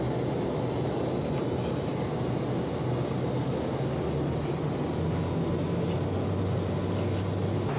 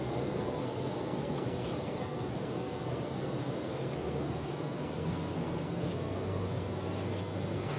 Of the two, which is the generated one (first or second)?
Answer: second